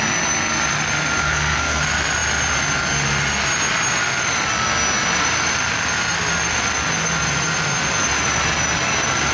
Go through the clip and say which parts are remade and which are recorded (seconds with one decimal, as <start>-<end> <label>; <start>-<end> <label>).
0.0-1.2 recorded; 1.2-1.8 remade; 1.8-9.3 recorded